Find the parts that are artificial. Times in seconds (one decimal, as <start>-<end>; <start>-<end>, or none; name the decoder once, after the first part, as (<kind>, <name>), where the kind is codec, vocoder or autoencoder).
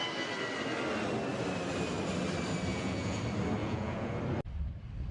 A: 2.7-3.2 (vocoder, Vocos); 3.6-4.2